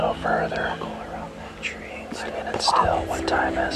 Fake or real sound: real